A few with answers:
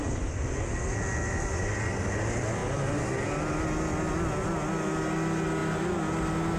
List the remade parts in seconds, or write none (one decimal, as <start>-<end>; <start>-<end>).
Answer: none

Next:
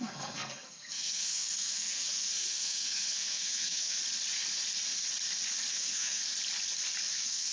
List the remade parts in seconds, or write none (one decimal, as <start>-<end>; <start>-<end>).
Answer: 0.0-4.0; 5.7-6.2; 7.1-7.5

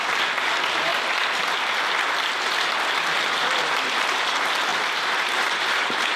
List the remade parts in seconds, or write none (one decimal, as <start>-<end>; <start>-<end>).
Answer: 4.7-6.2

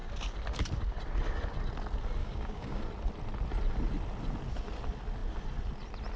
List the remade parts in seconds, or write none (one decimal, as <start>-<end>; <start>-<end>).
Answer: 2.2-2.8